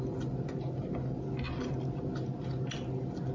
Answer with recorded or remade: recorded